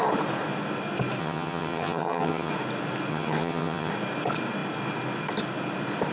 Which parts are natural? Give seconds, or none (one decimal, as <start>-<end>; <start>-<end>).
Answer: 0.0-1.2; 2.5-3.1; 3.9-6.1

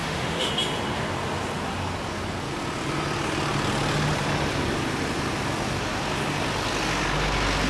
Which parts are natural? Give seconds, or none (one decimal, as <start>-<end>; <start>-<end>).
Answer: 0.5-7.7

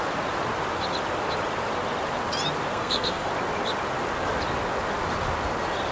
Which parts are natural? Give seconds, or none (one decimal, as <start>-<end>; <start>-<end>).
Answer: 0.0-2.7; 3.3-5.9

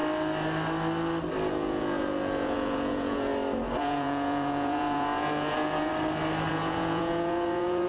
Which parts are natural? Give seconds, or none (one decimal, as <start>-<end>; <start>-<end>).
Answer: 0.0-1.5; 3.3-3.8; 5.9-6.5

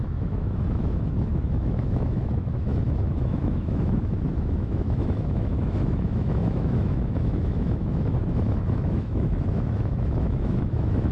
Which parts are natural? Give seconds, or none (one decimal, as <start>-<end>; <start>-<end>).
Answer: none

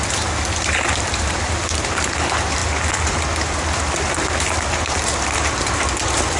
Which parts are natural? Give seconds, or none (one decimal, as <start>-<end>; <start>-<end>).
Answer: 0.0-6.4

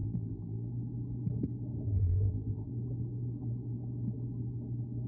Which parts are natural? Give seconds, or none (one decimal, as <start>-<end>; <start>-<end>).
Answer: 0.7-1.9; 2.7-5.1